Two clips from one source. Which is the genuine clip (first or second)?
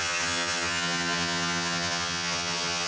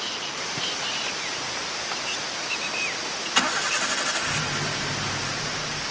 second